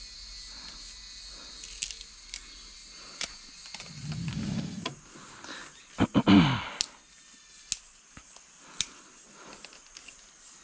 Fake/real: real